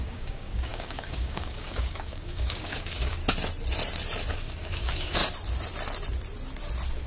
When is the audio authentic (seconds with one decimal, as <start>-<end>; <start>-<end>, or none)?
3.2-4.3; 5.2-7.1